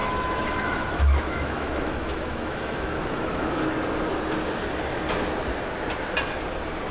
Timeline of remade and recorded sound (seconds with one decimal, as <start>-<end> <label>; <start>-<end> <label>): 0.0-3.5 remade; 3.5-6.9 recorded